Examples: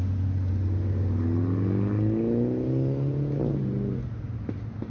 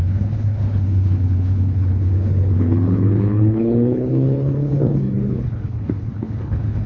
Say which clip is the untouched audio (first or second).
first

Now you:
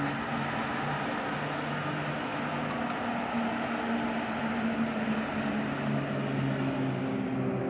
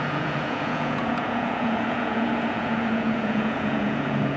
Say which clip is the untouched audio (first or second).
first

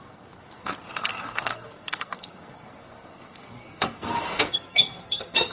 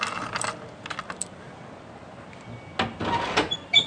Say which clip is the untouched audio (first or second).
second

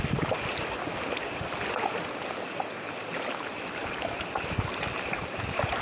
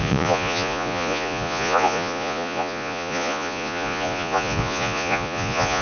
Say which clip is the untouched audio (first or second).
first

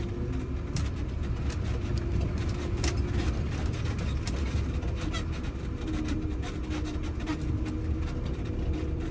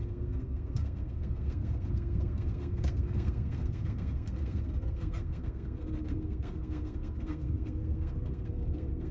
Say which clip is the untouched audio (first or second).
first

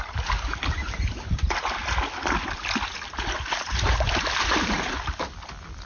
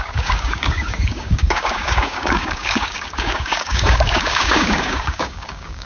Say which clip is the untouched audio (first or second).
first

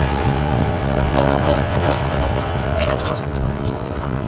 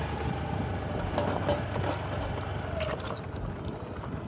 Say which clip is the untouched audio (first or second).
second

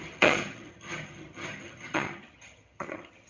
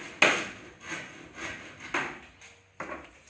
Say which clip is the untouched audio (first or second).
second